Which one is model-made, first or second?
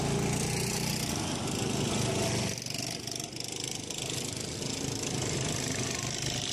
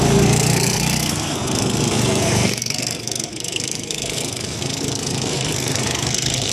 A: second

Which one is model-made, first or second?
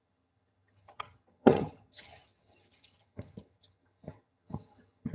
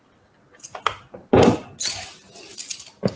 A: first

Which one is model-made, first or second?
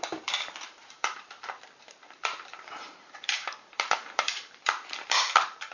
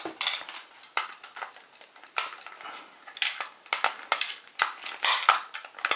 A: first